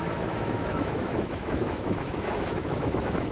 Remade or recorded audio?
remade